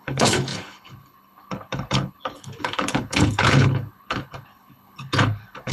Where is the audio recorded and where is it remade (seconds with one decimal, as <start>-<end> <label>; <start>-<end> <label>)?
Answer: 0.0-5.7 remade